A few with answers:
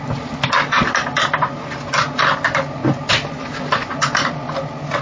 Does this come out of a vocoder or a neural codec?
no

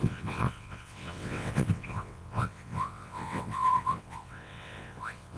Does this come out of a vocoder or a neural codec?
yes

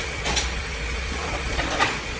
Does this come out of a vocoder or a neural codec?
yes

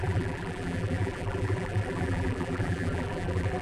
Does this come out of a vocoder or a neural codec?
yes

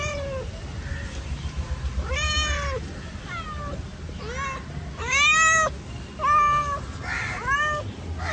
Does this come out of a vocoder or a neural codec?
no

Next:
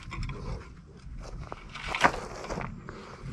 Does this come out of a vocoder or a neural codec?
no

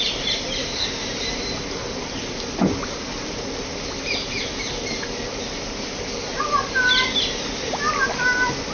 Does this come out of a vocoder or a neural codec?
no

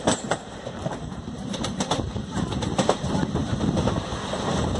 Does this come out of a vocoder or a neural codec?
yes